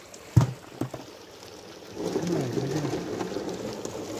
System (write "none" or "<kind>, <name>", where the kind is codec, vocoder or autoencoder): none